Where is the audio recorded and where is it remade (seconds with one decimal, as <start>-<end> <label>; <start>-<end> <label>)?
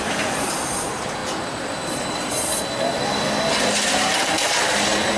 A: 0.0-5.2 recorded